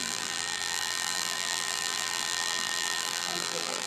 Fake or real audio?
fake